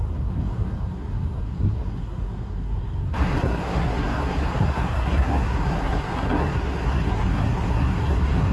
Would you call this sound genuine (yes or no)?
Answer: no